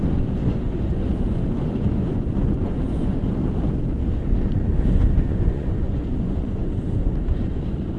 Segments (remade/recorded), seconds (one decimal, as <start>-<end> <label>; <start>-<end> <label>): 0.0-3.4 remade; 3.4-4.9 recorded; 4.9-8.0 remade